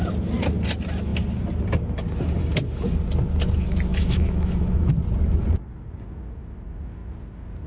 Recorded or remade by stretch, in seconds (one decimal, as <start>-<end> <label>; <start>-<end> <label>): 0.0-3.9 recorded; 3.9-4.9 remade; 4.9-7.7 recorded